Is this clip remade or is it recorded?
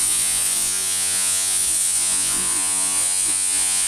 remade